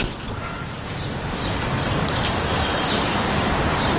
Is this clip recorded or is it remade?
remade